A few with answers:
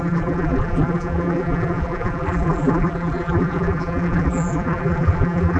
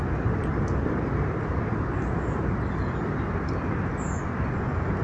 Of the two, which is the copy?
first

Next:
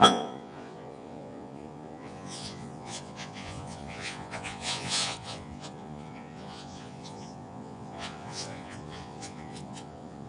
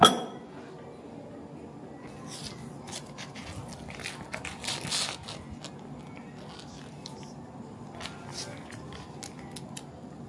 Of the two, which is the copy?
first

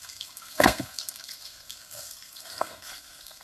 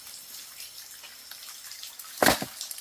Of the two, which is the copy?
first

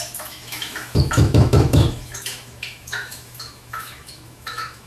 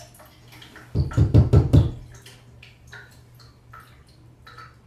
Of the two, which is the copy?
first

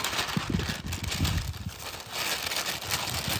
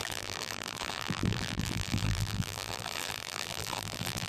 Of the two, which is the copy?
second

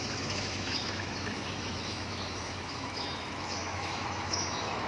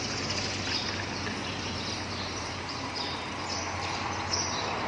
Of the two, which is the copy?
first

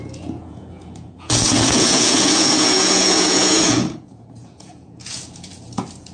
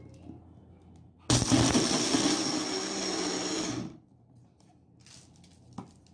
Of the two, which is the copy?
first